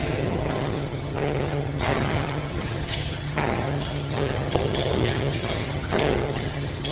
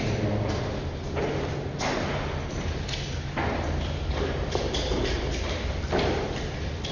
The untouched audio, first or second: second